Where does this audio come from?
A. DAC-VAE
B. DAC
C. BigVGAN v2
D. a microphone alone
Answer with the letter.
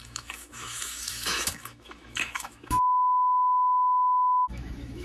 A